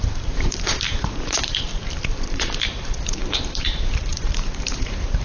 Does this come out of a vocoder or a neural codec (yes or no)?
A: yes